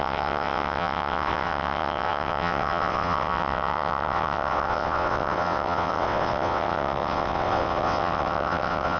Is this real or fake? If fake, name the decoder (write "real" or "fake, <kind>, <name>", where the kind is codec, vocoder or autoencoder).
fake, vocoder, WaveNeXt